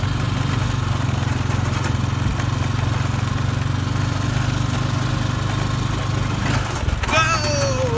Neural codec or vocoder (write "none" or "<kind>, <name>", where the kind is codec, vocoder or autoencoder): none